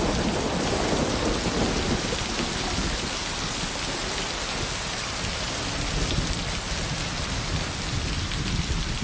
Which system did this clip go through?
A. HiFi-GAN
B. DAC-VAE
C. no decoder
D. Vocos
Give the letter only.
C